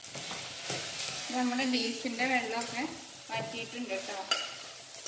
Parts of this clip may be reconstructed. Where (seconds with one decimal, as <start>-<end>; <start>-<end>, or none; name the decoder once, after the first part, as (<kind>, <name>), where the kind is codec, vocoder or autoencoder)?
1.0-2.0 (codec, SNAC)